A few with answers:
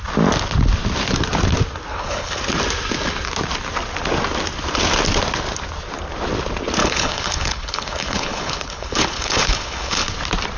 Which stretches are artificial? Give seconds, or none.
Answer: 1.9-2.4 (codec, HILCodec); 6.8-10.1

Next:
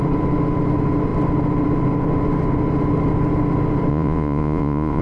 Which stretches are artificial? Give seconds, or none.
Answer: 3.9-5.0 (vocoder, Vocos)